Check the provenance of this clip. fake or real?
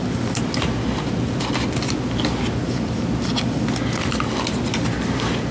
real